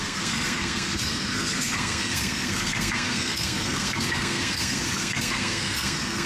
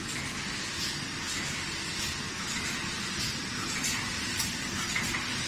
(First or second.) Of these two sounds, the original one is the second